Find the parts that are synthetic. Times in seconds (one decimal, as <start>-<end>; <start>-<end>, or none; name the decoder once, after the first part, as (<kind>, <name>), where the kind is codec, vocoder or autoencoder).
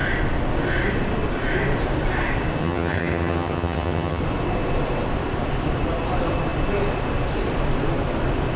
2.6-4.2 (vocoder, HiFi-GAN)